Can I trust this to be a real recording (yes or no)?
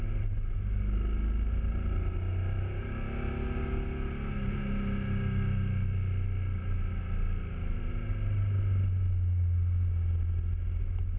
yes